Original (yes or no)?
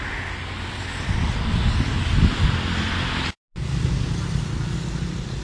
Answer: yes